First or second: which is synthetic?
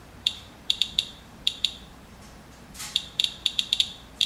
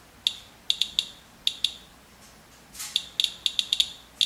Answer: first